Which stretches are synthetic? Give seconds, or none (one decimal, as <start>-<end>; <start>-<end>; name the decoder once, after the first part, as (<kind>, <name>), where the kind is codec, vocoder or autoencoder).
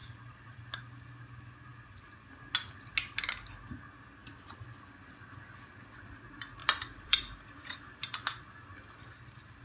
0.0-0.6 (vocoder, BigVGAN v2); 6.6-7.6